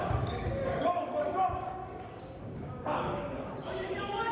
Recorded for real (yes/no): no